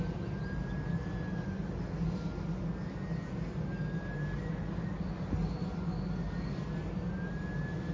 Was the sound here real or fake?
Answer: real